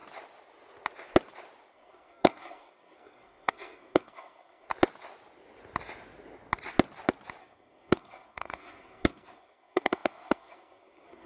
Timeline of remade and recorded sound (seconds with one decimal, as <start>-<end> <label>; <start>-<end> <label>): 0.0-1.7 recorded; 1.7-4.7 remade; 4.7-7.4 recorded; 7.4-11.3 remade